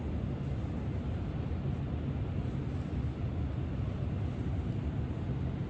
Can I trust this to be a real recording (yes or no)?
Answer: yes